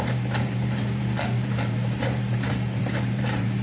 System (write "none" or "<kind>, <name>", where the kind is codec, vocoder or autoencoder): vocoder, BigVGAN v2